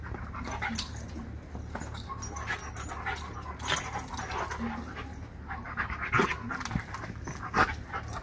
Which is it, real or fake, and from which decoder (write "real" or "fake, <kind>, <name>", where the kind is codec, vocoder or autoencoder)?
real